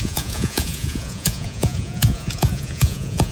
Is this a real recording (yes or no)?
no